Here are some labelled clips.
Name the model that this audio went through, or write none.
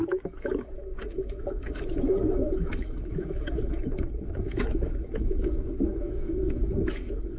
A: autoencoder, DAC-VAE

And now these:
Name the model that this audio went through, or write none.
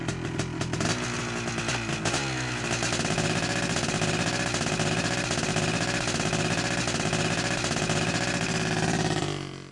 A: none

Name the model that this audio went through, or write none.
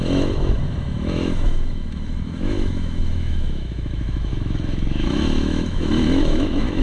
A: autoencoder, DAC-VAE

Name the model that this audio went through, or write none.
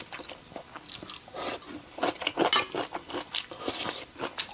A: none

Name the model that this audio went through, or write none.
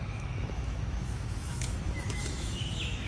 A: autoencoder, DAC-VAE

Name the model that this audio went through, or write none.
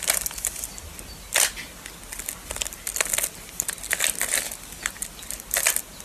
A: none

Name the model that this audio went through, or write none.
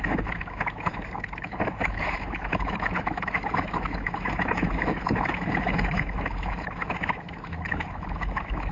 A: autoencoder, DAC-VAE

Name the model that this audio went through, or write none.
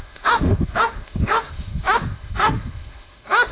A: autoencoder, DAC-VAE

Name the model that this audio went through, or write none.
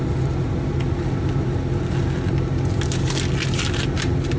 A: none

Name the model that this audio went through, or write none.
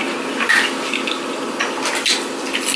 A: none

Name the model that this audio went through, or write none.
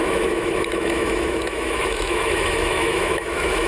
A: autoencoder, DAC-VAE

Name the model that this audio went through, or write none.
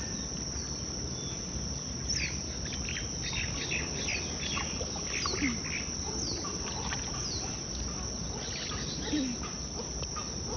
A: none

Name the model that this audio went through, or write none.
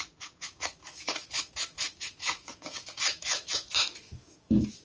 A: autoencoder, DAC-VAE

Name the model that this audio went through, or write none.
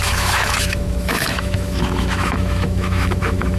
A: autoencoder, DAC-VAE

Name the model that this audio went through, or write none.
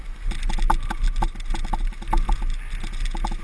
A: none